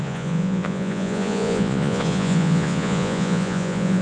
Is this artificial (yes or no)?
yes